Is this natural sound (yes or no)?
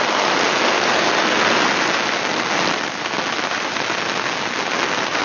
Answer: yes